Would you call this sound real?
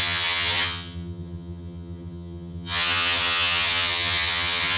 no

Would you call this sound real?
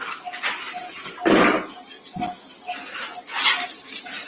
yes